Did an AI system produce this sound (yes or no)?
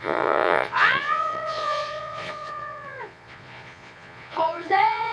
yes